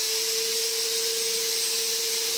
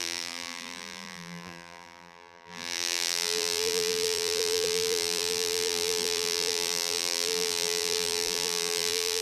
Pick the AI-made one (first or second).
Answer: second